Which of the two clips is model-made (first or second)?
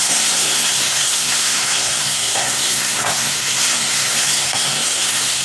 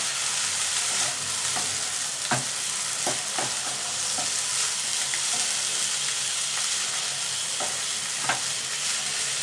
first